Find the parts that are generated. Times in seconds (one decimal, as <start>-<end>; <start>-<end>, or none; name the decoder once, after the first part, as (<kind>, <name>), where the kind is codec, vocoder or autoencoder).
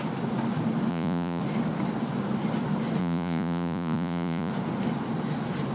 0.9-1.4 (vocoder, Vocos); 3.0-4.5